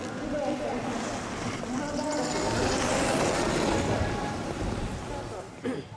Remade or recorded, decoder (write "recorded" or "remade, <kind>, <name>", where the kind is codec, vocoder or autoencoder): recorded